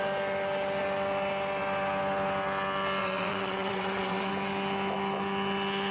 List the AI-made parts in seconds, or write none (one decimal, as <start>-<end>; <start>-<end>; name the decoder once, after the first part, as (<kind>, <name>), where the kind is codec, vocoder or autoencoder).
3.0-4.3 (vocoder, WaveNeXt)

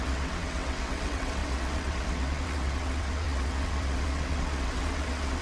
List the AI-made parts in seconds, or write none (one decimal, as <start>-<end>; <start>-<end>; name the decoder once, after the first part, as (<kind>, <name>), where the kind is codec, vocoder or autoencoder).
0.0-5.4 (vocoder, WaveNeXt)

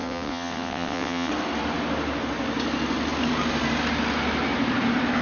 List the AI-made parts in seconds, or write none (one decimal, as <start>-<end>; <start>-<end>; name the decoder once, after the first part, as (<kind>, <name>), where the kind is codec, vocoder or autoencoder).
0.0-1.3 (vocoder, WaveNeXt)

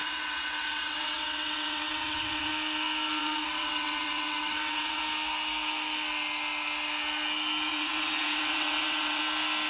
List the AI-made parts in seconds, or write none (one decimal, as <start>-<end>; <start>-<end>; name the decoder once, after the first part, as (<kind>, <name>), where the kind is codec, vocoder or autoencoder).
0.0-2.5 (vocoder, WaveNeXt); 3.2-5.0; 7.7-9.2

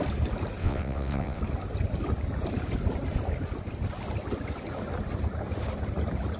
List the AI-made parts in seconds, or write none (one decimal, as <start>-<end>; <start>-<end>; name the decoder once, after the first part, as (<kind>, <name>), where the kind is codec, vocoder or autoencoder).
0.6-1.4 (vocoder, WaveNeXt)